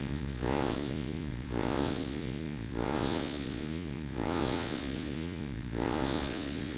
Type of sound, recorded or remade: remade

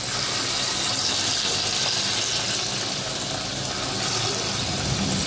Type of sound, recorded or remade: recorded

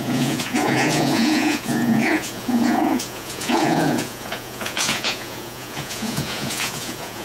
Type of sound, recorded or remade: remade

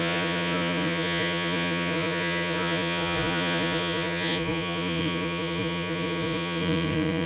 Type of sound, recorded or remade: remade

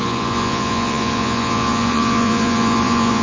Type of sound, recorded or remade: remade